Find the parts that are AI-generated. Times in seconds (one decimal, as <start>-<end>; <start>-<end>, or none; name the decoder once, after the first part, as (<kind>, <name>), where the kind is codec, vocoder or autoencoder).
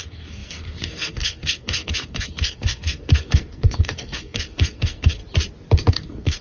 0.0-5.2 (codec, SNAC); 5.9-6.4